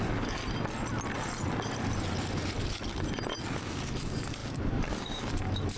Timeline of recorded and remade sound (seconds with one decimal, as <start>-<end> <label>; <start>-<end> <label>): 0.0-0.4 remade; 0.4-3.6 recorded; 3.6-5.8 remade